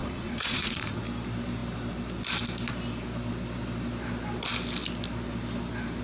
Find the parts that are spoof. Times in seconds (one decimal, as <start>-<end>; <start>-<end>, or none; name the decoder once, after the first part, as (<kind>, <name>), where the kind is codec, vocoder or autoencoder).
0.0-1.0 (vocoder, Vocos)